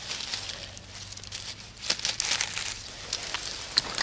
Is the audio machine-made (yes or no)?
no